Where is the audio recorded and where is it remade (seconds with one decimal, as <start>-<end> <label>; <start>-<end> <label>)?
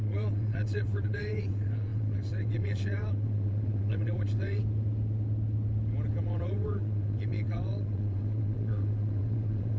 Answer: 0.0-4.6 remade; 4.6-6.2 recorded; 6.2-9.8 remade